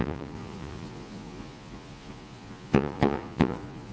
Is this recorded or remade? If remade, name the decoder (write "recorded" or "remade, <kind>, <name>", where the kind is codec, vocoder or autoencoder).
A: remade, vocoder, Vocos